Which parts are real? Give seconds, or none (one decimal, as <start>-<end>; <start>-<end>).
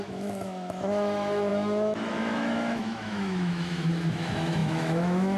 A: none